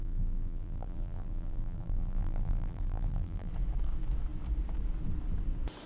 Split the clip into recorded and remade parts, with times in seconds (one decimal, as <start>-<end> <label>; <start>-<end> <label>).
0.0-3.5 remade; 3.5-5.9 recorded